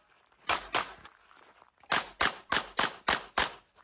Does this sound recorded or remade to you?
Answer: recorded